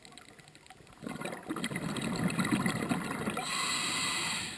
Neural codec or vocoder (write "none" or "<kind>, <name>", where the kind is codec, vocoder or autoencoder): none